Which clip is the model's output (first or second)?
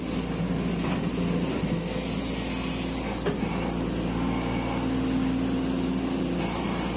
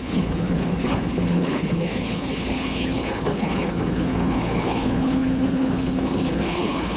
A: second